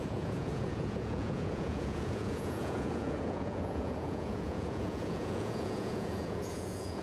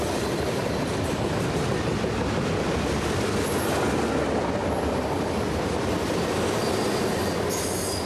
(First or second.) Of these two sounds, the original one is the second